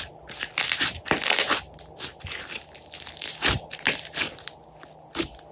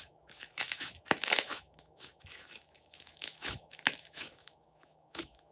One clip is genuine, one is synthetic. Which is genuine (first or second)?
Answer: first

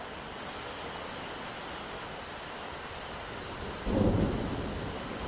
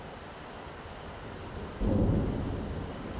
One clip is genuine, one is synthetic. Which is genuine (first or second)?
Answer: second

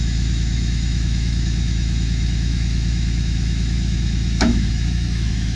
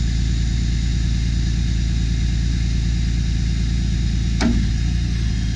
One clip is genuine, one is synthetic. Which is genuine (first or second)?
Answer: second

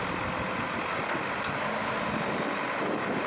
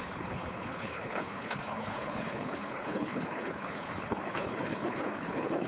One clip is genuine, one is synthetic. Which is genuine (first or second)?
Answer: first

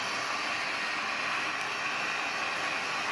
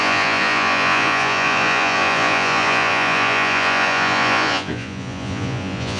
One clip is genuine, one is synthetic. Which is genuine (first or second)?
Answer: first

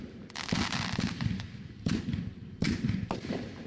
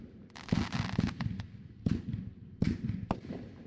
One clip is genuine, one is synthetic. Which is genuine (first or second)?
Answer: second